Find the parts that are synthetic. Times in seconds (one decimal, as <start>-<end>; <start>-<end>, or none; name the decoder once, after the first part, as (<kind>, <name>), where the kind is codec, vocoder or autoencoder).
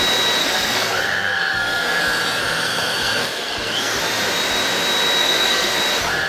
0.4-2.0 (codec, SNAC); 2.4-4.0; 5.2-5.8